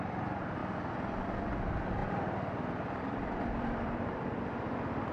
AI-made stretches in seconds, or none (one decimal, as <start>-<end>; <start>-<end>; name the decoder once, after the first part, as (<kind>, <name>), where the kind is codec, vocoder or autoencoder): 0.6-1.2 (vocoder, BigVGAN v2); 2.0-4.3